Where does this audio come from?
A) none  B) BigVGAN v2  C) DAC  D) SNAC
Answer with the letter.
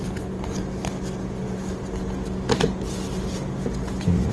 A